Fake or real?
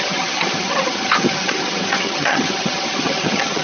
fake